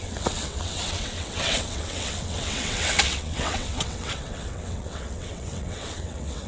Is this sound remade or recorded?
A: remade